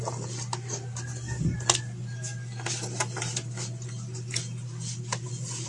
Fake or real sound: real